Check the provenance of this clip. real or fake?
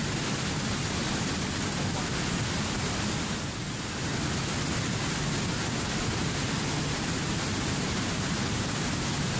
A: real